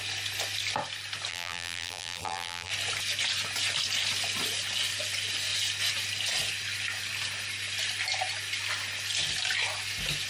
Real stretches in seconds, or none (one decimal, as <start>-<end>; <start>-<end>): 0.0-1.3; 2.7-10.3